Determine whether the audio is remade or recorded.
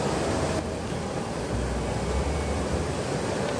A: recorded